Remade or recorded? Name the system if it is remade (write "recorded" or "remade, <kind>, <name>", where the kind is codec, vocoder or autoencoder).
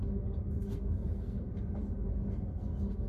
remade, codec, SNAC